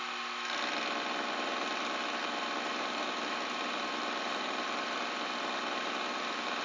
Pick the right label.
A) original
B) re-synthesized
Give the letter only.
A